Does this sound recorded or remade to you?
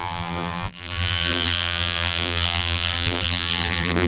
remade